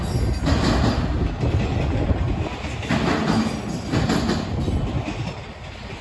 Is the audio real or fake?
real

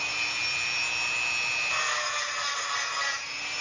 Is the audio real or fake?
real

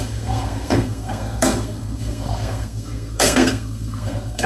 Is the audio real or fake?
fake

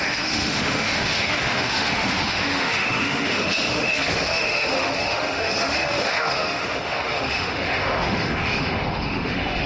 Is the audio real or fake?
fake